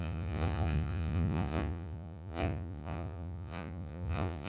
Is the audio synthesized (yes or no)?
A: yes